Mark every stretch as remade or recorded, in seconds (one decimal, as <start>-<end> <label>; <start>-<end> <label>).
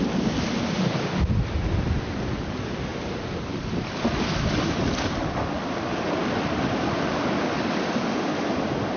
0.0-9.0 recorded